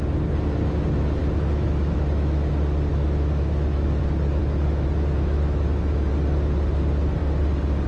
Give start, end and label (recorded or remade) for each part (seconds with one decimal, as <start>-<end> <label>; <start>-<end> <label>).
0.0-1.2 recorded; 1.2-2.5 remade; 2.5-2.9 recorded; 2.9-4.0 remade; 4.0-4.4 recorded; 4.4-6.1 remade; 6.1-7.9 recorded